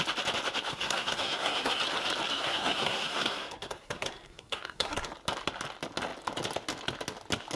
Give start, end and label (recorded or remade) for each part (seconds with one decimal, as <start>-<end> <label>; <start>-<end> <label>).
0.0-0.7 recorded; 0.7-1.8 remade; 1.8-2.3 recorded; 2.3-5.1 remade; 5.1-7.6 recorded